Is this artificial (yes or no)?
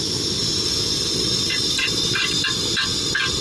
no